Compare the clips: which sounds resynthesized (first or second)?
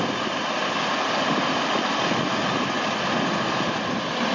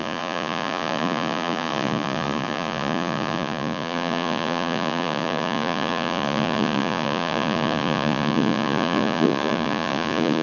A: second